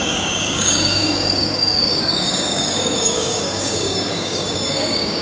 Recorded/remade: remade